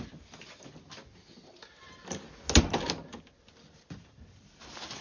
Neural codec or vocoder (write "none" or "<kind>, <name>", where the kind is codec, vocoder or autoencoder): none